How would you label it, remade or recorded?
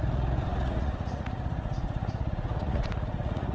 remade